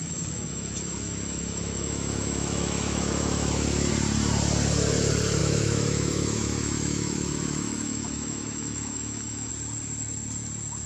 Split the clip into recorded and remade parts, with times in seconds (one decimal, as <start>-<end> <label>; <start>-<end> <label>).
0.0-3.9 remade; 3.9-5.4 recorded; 5.4-9.5 remade; 9.5-10.9 recorded